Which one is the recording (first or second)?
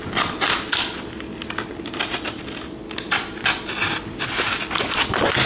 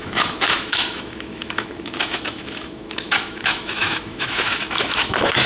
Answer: first